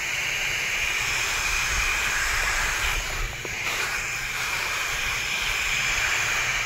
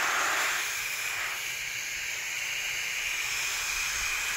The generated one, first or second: first